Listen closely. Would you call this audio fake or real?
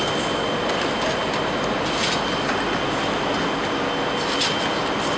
real